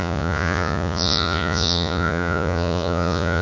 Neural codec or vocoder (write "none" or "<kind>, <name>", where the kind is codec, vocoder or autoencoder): vocoder, Vocos